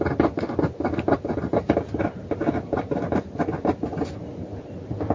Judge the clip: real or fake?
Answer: real